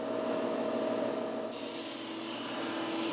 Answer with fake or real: real